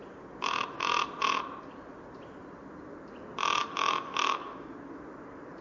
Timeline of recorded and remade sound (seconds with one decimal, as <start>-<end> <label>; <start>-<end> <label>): 0.0-3.6 recorded; 3.6-4.7 remade; 4.7-5.6 recorded